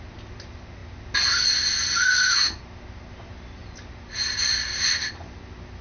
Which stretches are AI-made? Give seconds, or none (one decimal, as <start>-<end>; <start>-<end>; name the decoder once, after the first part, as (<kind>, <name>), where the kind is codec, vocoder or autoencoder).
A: none